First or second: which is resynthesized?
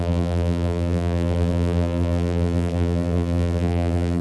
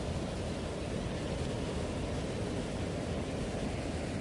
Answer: first